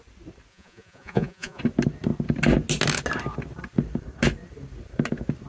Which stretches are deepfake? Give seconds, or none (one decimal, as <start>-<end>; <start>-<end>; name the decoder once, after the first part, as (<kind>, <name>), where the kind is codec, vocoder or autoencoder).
0.5-1.6 (vocoder, Vocos)